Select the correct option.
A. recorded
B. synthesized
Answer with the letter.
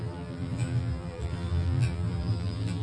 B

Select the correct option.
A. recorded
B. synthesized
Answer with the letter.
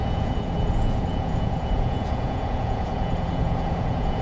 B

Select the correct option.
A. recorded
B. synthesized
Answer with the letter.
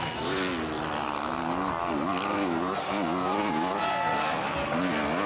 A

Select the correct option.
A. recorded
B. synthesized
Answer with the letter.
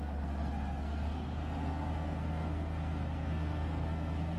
B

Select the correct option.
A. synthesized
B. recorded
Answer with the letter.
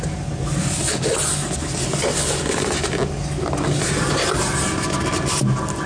B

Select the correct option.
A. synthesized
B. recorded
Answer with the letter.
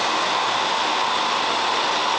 B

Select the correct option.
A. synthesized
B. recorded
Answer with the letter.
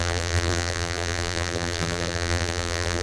A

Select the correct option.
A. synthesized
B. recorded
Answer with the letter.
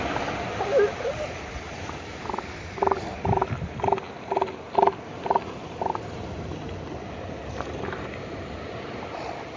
B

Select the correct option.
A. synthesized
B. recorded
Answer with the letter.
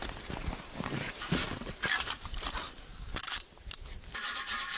A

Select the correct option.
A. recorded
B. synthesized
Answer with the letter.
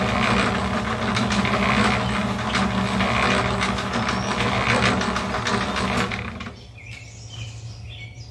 A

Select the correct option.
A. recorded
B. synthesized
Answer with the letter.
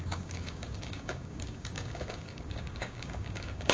B